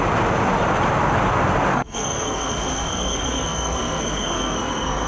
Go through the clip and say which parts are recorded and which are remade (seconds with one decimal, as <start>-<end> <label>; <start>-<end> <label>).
0.0-1.7 recorded; 1.7-5.1 remade